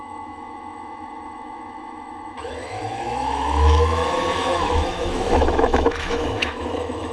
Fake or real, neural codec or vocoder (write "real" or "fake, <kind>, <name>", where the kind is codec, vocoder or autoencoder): fake, autoencoder, DAC-VAE